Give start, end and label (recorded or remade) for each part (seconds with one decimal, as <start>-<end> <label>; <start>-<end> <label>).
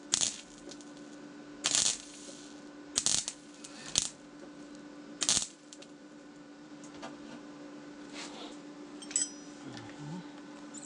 0.0-5.4 recorded; 5.4-6.7 remade; 6.7-10.9 recorded